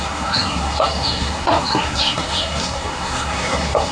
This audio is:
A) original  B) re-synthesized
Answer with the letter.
B